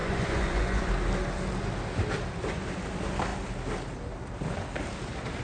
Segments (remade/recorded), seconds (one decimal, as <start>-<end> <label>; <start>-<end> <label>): 0.0-0.9 remade; 0.9-5.4 recorded